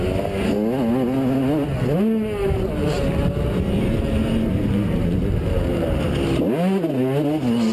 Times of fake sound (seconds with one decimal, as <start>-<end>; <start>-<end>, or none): 2.4-6.0